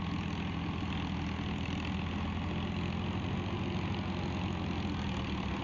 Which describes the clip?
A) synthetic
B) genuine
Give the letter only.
B